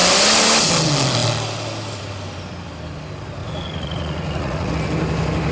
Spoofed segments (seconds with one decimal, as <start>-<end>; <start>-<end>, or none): 3.4-4.7